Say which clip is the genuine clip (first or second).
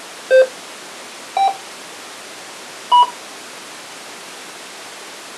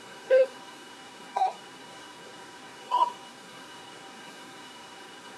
first